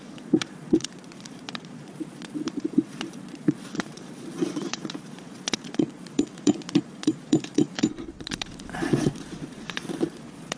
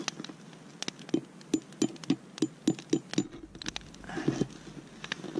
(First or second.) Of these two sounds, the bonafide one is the second